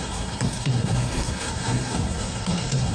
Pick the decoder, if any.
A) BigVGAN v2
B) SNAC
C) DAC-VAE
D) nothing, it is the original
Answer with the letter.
B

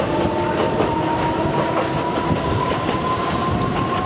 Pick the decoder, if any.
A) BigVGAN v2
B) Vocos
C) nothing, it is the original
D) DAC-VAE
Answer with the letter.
C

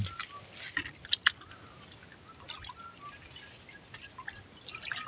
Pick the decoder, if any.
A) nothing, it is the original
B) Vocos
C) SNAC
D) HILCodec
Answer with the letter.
A